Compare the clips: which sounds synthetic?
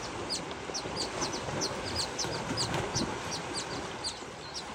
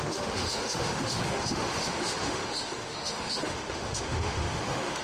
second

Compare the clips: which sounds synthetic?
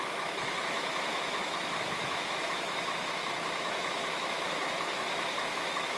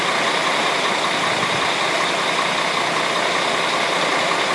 first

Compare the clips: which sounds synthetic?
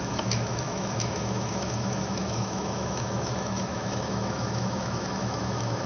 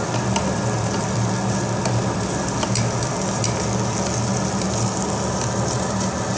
first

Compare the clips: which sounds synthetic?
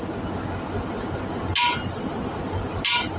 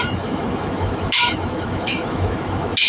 second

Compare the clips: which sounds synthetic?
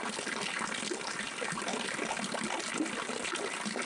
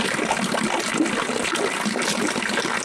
first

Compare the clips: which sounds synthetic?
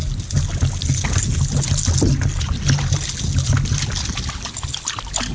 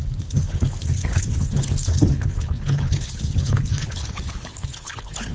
second